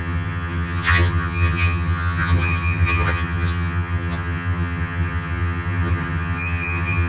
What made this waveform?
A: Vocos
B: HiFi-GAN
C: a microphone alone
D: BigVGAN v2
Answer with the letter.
B